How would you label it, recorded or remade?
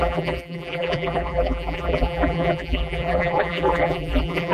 remade